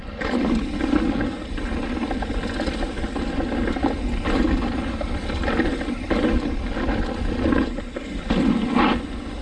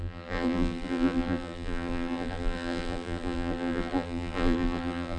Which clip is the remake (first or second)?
second